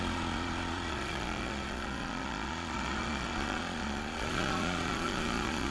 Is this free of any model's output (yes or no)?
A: no